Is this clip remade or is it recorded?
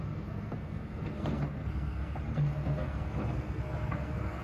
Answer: remade